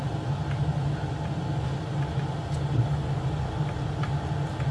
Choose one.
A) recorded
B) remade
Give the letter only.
A